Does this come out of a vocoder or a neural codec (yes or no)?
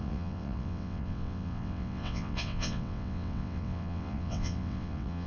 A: yes